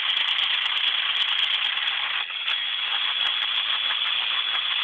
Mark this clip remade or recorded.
recorded